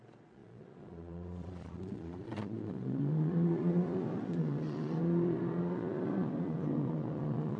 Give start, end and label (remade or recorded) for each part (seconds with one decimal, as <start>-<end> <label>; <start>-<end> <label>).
0.0-7.6 remade